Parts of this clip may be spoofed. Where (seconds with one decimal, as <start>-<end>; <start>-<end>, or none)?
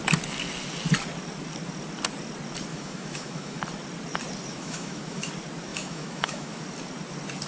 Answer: 2.7-3.6; 4.5-5.3; 5.7-6.6